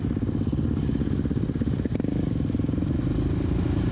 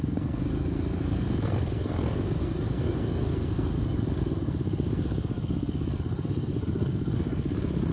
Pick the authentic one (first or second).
first